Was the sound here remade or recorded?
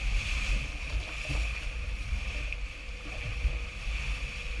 recorded